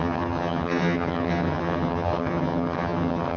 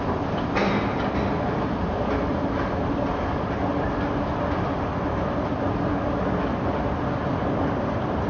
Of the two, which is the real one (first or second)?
second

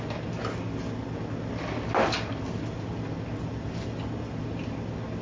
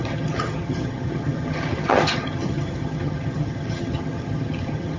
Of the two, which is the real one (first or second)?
first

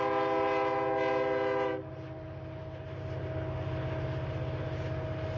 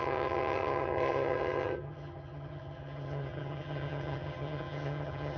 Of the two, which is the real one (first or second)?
first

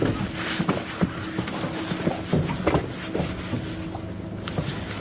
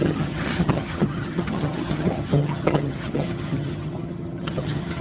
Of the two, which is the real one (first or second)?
first